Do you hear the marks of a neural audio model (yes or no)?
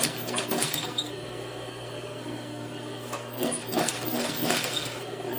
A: yes